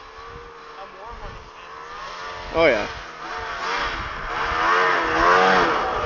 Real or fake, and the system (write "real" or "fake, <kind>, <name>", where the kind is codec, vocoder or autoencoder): real